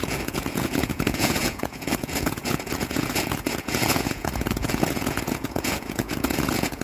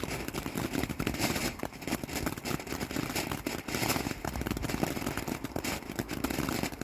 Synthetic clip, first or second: first